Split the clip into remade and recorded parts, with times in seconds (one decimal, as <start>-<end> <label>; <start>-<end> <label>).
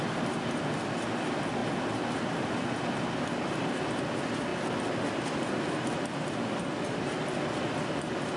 0.0-8.4 recorded